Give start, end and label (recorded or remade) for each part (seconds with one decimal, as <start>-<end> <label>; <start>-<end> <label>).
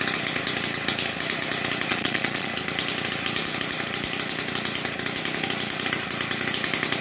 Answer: 0.0-1.9 recorded; 1.9-2.5 remade; 2.5-7.0 recorded